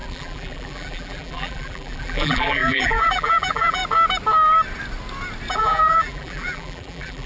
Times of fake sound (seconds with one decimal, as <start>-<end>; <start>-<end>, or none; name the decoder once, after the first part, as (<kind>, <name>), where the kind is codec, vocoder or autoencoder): 0.0-3.8 (vocoder, BigVGAN v2); 5.5-7.3